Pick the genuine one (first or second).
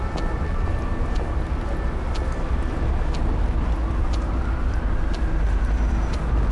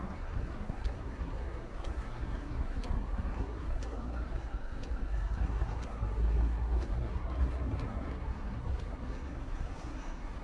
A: first